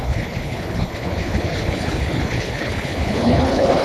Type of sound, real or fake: fake